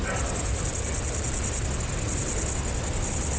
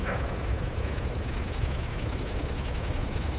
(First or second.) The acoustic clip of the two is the first